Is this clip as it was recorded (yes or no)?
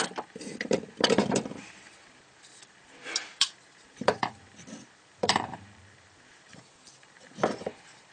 no